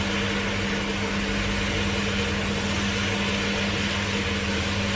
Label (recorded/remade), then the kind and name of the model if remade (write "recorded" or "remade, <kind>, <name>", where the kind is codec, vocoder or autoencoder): recorded